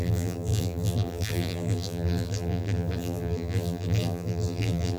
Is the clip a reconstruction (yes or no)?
yes